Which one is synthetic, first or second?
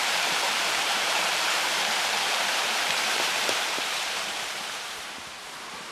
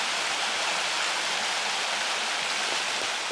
first